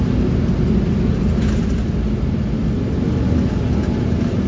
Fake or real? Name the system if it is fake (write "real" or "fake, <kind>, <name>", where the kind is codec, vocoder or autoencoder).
real